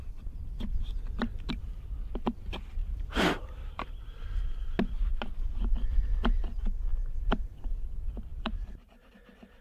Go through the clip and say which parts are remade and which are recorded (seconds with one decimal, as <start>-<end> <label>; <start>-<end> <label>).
0.0-2.8 recorded; 2.8-3.7 remade; 3.7-6.9 recorded; 6.9-7.7 remade; 7.7-8.3 recorded; 8.3-9.1 remade; 9.1-9.6 recorded